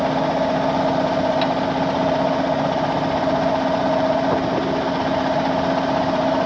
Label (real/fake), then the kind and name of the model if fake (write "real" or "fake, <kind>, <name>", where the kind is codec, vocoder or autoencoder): real